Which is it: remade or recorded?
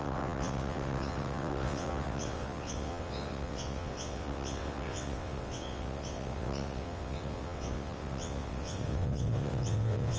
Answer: remade